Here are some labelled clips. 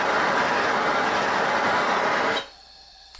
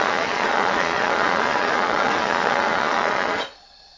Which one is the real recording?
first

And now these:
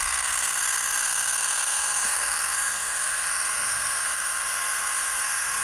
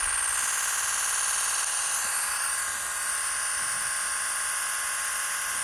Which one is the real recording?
second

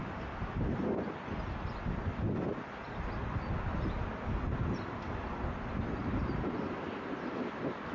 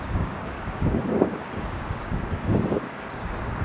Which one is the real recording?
first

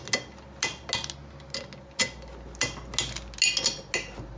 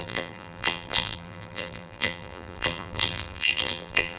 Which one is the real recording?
first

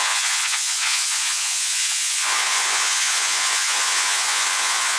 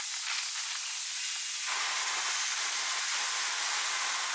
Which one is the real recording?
second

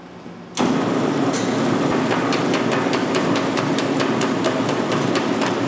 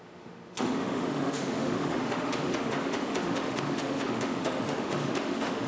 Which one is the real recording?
first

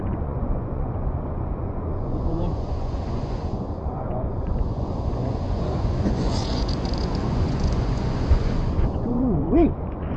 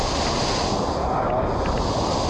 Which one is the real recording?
second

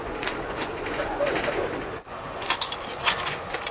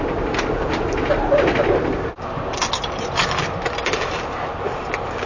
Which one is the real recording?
second